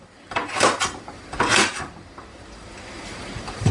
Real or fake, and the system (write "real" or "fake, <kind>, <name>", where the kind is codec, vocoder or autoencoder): fake, vocoder, BigVGAN v2